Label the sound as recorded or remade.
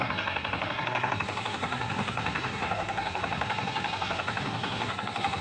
remade